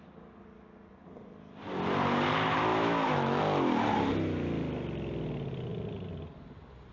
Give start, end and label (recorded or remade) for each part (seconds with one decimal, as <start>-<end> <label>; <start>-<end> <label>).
0.0-2.7 recorded; 2.7-3.4 remade; 3.4-6.9 recorded